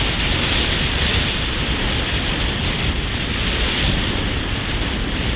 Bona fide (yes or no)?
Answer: yes